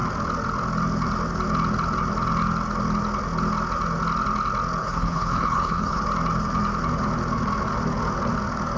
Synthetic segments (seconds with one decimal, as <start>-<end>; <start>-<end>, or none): 4.8-6.0